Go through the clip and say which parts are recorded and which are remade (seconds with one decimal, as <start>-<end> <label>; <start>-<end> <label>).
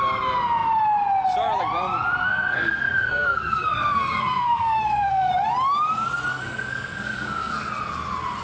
0.0-2.2 recorded; 2.2-5.3 remade; 5.3-6.3 recorded; 6.3-7.7 remade; 7.7-8.4 recorded